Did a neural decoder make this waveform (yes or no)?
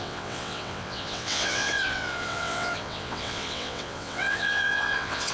yes